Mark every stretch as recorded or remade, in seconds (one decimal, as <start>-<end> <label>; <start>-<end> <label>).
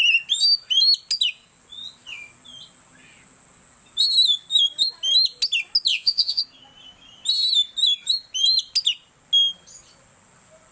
0.0-5.9 recorded; 5.9-6.4 remade; 6.4-10.7 recorded